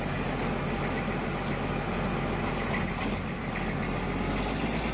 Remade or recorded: recorded